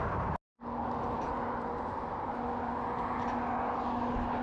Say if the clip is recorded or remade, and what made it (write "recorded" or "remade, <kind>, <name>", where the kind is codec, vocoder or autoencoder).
recorded